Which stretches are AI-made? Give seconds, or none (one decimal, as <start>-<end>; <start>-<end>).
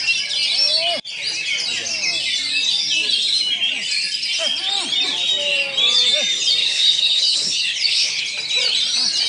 6.6-8.2